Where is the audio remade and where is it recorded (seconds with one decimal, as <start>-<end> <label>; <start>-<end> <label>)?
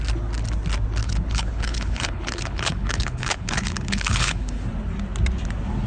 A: 0.0-1.0 recorded; 1.0-4.5 remade; 4.5-5.9 recorded